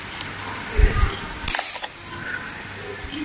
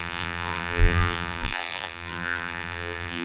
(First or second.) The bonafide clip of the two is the first